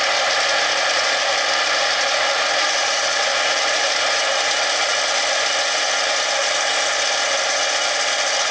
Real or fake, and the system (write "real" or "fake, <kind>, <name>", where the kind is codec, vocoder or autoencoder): real